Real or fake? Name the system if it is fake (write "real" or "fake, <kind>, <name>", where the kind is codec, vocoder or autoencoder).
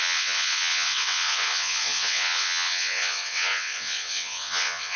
fake, vocoder, WaveNeXt